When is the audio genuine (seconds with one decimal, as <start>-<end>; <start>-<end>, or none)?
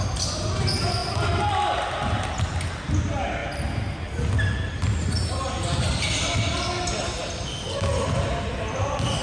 0.0-9.2